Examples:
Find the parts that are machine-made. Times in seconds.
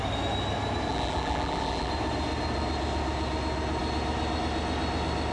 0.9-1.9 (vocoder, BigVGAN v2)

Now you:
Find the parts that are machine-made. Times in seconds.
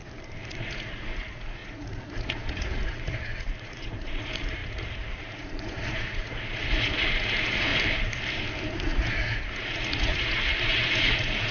0.6-7.7 (vocoder, Vocos); 8.7-11.5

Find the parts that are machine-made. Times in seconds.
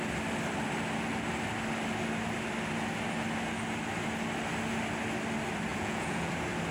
5.7-6.3 (vocoder, Vocos)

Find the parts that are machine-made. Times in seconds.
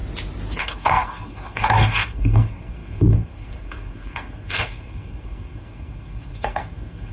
0.6-7.1 (codec, SNAC)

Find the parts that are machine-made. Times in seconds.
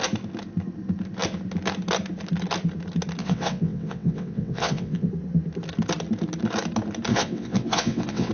3.2-5.1 (vocoder, WaveNeXt); 7.1-8.3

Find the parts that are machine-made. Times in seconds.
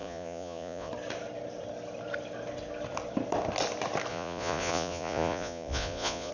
0.0-0.9 (vocoder, Vocos); 4.1-6.3